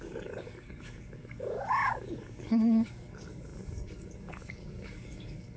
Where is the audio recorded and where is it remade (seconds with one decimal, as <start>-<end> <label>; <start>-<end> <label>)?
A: 0.0-5.6 remade